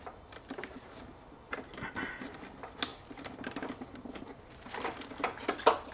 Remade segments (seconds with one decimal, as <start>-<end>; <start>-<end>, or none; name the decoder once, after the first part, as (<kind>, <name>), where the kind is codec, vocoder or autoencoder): none